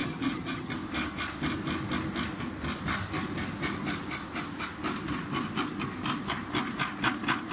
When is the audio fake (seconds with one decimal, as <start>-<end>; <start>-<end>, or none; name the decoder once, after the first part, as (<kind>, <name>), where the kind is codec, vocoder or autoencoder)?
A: 0.0-0.7 (vocoder, HiFi-GAN)

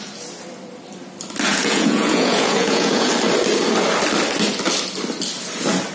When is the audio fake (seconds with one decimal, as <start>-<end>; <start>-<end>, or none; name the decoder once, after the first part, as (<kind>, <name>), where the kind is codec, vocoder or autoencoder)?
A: 1.5-3.1 (vocoder, Vocos)

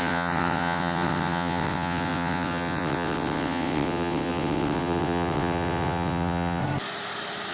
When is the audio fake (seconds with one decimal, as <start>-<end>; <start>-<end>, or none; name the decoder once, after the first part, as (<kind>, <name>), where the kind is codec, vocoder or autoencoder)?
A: 0.0-6.6 (vocoder, WaveNeXt)